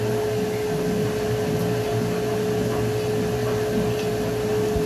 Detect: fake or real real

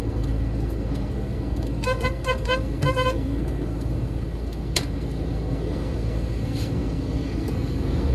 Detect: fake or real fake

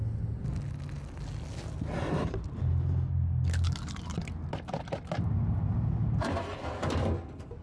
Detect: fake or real real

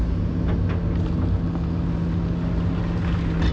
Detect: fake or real real